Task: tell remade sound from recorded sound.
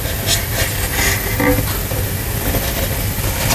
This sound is recorded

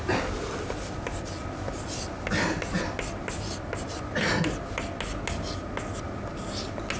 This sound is recorded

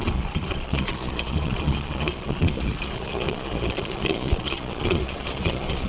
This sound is remade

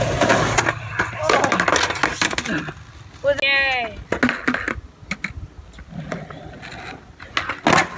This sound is recorded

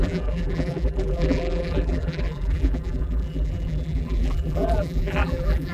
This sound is remade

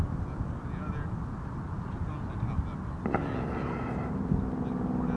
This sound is recorded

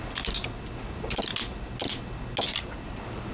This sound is recorded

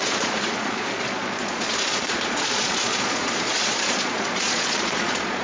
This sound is remade